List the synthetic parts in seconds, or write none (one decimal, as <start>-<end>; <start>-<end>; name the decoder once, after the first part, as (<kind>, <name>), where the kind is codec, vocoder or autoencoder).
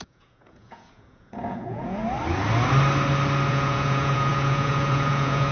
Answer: 0.0-2.0 (vocoder, Vocos); 3.5-5.5